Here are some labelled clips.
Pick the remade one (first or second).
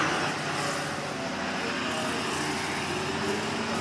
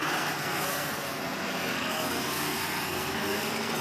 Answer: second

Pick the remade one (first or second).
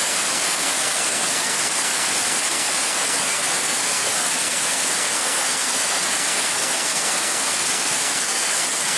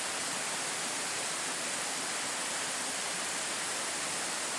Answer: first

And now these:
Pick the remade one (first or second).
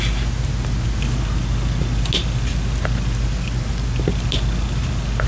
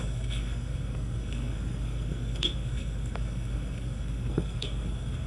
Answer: second